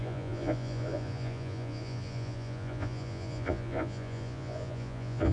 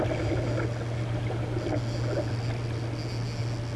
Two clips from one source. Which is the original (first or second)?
second